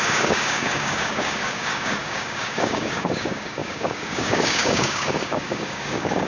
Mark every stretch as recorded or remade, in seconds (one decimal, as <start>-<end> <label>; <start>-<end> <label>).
0.0-6.3 remade